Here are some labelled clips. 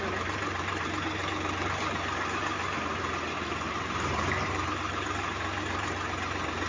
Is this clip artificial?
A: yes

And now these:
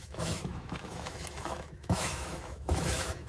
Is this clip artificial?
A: yes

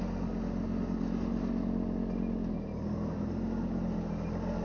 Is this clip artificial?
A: no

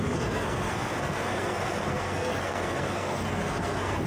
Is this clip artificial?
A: yes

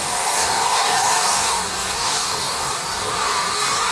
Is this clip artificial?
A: yes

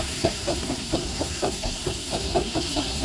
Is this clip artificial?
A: yes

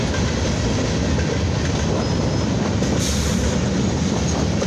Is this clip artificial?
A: no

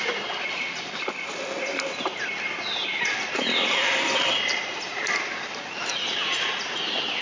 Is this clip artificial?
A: no